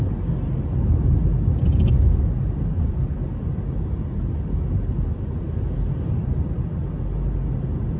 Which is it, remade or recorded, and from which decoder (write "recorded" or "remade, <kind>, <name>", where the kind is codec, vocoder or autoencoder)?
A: recorded